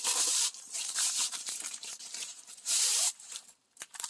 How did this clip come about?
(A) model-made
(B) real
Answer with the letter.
A